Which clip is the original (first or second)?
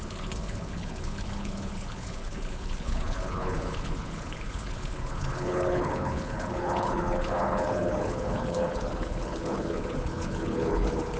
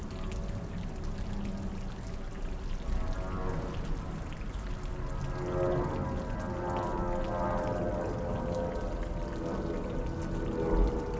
second